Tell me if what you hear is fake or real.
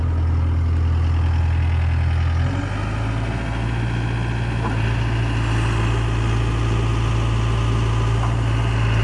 real